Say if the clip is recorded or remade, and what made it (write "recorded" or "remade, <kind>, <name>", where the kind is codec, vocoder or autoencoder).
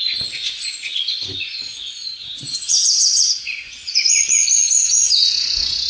remade, vocoder, Vocos